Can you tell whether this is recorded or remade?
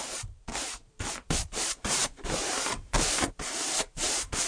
remade